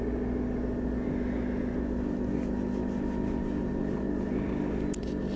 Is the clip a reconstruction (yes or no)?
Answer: no